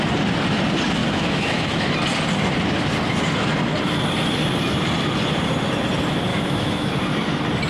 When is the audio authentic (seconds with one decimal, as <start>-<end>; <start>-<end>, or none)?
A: 0.0-1.0; 1.8-6.3; 6.9-7.7